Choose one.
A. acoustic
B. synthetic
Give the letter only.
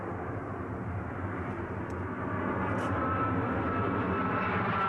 A